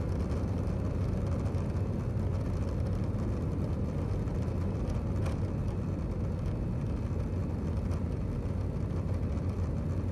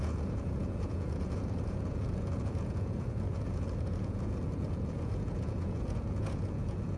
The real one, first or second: first